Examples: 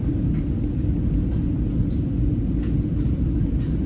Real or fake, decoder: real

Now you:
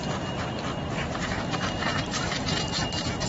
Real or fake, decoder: fake, vocoder, BigVGAN v2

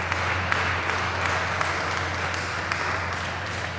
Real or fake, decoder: real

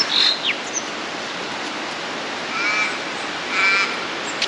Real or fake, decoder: real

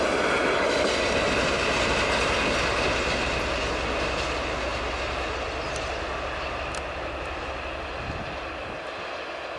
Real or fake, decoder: real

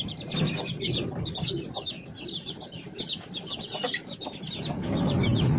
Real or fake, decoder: real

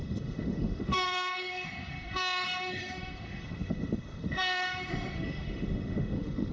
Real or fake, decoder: fake, autoencoder, DAC-VAE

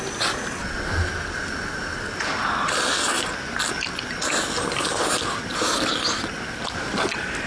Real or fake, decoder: real